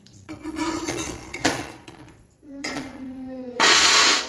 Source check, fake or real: fake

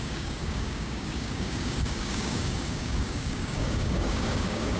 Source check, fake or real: fake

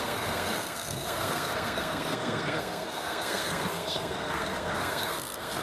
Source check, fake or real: fake